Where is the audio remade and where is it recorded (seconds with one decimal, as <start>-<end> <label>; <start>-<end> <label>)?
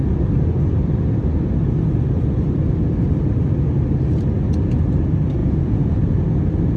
0.0-5.4 recorded; 5.4-6.2 remade; 6.2-6.8 recorded